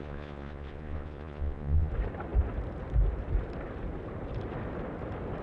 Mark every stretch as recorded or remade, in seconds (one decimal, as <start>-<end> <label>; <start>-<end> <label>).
0.0-1.9 remade; 1.9-5.4 recorded